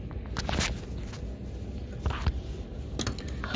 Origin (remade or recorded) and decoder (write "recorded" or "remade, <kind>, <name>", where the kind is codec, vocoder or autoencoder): recorded